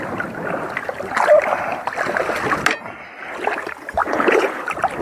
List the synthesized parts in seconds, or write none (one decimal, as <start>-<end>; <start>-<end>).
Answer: 4.0-4.6